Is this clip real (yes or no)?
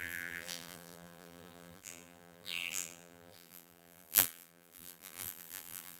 no